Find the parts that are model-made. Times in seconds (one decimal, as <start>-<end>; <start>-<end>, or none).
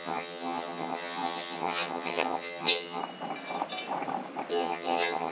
0.0-3.0; 4.5-5.3